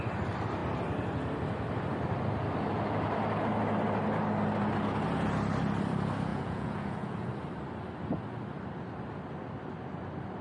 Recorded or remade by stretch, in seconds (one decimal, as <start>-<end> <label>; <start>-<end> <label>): 0.0-6.3 recorded; 6.3-7.3 remade; 7.3-10.4 recorded